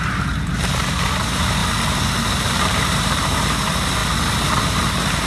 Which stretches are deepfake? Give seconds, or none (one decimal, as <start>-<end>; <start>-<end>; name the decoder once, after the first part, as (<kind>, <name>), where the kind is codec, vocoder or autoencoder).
0.0-1.6 (vocoder, BigVGAN v2); 2.3-4.0